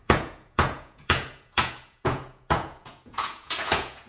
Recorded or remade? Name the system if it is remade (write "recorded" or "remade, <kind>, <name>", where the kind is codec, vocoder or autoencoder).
remade, vocoder, Vocos